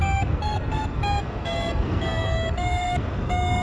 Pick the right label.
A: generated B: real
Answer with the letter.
A